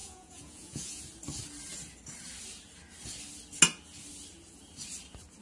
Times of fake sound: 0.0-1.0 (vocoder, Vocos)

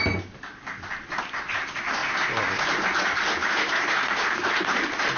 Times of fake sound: none

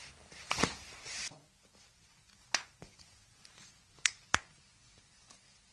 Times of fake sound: 1.9-5.3 (vocoder, Vocos)

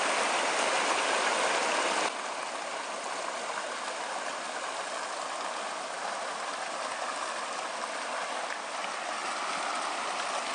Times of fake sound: none

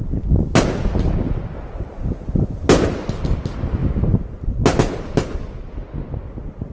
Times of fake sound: none